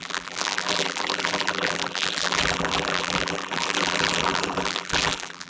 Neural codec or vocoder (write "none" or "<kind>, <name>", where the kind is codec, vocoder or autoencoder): vocoder, BigVGAN v2